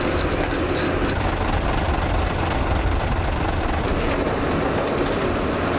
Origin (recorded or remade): recorded